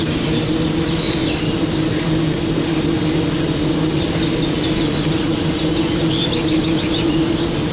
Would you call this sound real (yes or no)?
yes